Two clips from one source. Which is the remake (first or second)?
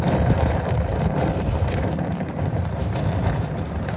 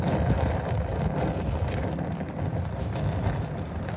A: first